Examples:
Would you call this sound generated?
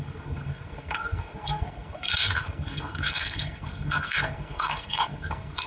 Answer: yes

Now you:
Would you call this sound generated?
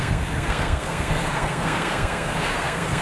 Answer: yes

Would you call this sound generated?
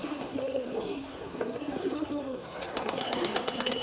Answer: yes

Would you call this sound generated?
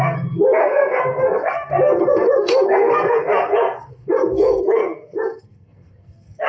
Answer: yes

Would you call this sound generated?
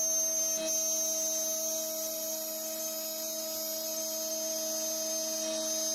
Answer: no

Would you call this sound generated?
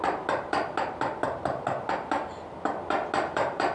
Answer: no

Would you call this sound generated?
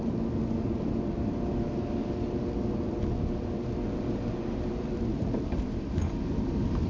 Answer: no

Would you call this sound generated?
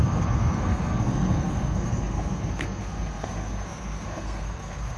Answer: yes